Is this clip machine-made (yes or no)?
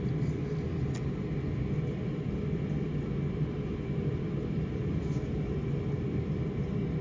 no